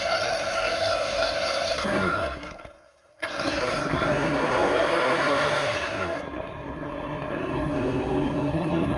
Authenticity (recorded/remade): remade